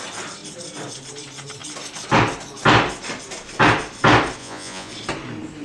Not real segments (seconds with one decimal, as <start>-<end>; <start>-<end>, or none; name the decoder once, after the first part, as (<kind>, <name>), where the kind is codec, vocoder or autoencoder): 4.4-4.9 (vocoder, Vocos)